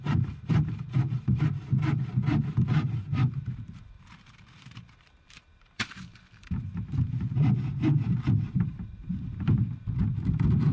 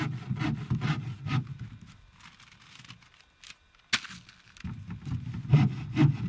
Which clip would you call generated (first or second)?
first